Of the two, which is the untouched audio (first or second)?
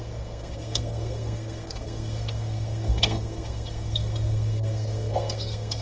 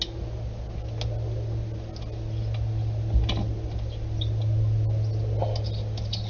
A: second